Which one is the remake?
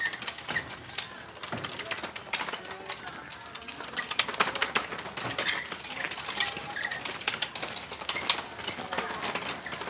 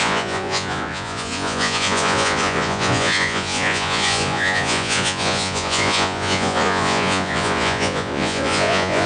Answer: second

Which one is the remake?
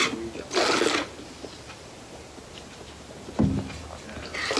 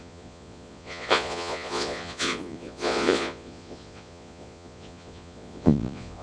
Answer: second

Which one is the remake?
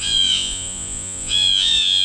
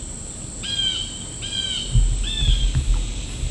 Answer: first